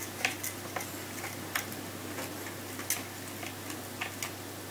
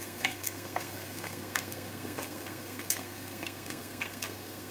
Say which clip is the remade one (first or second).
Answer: second